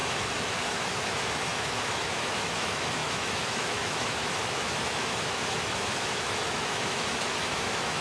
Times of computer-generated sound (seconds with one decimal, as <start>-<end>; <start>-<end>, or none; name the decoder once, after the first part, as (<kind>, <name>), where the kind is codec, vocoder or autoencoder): 0.0-8.0 (autoencoder, DAC-VAE)